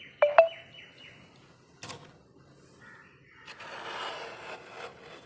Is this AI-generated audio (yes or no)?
no